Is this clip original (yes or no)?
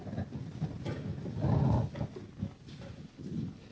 yes